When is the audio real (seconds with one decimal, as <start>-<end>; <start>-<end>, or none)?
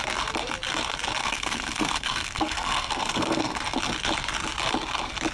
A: 0.0-1.2; 3.6-5.3